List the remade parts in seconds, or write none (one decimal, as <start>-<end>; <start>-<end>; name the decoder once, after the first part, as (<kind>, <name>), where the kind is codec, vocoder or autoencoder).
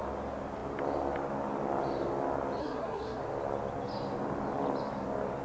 2.6-3.2 (codec, SNAC)